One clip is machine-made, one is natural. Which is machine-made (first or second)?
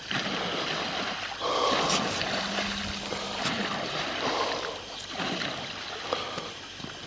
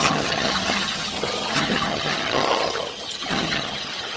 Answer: second